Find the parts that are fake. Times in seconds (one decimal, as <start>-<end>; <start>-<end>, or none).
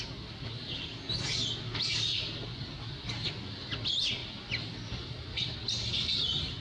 none